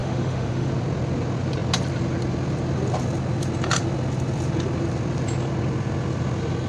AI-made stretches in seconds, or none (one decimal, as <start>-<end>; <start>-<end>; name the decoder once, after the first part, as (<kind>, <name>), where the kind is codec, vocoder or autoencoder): 0.0-0.7 (autoencoder, DAC-VAE)